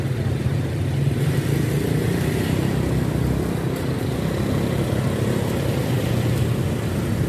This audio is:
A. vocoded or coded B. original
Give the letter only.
B